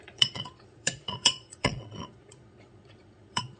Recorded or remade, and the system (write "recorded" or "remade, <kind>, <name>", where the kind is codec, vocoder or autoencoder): remade, vocoder, Vocos